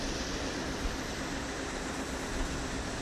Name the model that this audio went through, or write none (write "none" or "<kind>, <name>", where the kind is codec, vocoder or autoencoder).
none